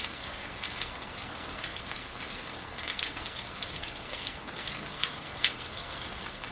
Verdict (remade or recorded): remade